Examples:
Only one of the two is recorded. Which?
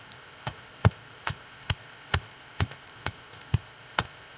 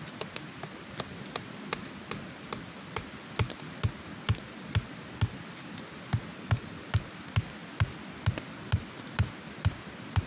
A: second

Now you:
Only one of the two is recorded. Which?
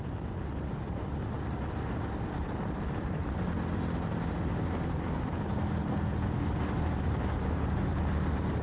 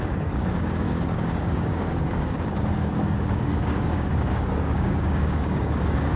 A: first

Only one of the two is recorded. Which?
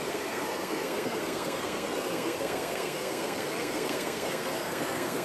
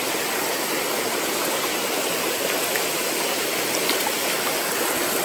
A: second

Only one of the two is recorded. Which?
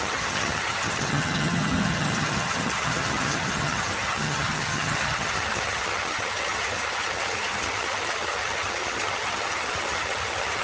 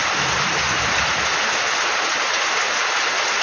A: second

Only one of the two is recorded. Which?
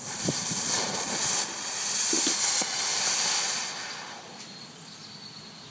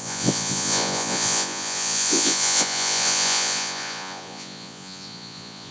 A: first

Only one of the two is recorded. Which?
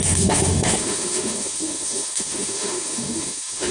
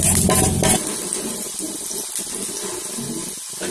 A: second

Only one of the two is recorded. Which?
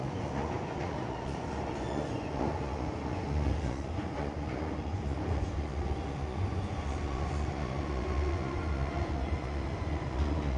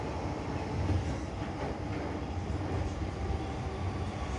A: second